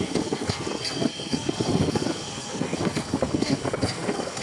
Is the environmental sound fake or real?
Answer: fake